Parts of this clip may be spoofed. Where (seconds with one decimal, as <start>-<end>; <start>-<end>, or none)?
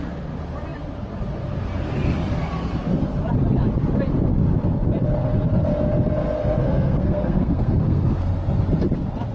6.4-8.2